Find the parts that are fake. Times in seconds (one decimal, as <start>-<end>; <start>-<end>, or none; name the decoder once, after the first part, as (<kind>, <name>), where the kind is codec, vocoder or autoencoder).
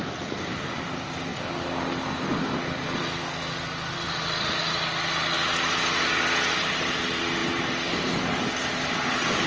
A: none